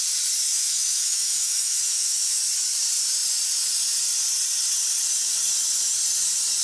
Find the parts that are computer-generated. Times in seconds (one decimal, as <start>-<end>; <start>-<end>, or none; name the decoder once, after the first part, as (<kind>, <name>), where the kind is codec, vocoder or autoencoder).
0.5-2.4 (autoencoder, DAC-VAE)